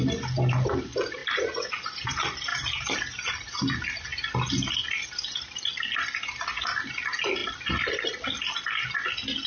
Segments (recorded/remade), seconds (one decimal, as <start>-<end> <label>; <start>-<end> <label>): 0.0-9.5 recorded